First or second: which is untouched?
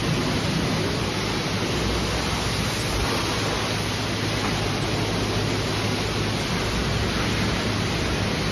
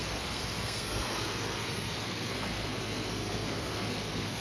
first